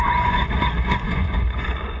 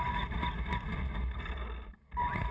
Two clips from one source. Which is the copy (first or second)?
first